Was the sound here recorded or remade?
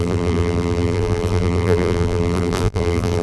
remade